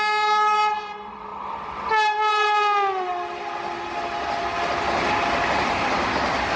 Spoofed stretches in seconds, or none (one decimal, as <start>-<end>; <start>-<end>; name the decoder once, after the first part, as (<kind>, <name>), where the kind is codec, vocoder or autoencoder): none